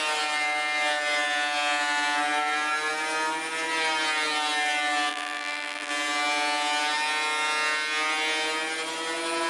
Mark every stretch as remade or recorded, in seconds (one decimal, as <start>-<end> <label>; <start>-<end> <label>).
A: 0.0-5.1 recorded; 5.1-5.9 remade; 5.9-9.5 recorded